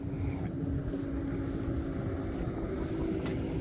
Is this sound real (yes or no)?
yes